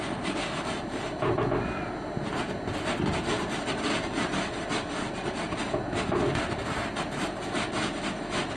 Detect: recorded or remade recorded